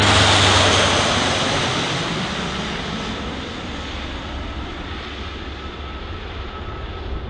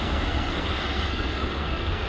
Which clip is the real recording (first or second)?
first